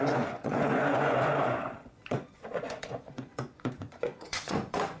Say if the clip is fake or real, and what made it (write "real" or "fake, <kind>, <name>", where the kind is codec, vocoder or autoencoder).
fake, vocoder, Vocos